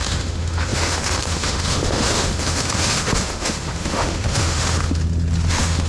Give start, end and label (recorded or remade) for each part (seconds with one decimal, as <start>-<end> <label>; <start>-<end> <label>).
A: 0.0-5.0 remade; 5.0-5.5 recorded; 5.5-5.9 remade